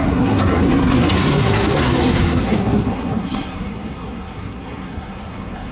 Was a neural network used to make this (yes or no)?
yes